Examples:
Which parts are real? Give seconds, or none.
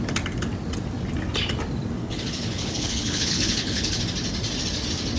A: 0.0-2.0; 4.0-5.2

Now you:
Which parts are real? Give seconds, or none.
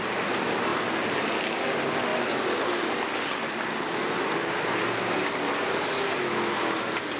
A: 0.0-7.2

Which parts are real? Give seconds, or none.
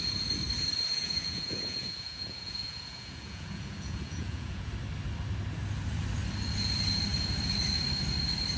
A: 0.0-0.9; 4.7-8.6